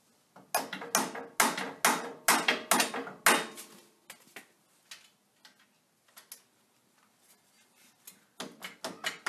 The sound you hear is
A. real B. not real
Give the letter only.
A